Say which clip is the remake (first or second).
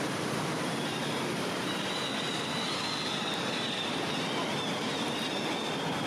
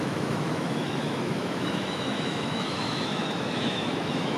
second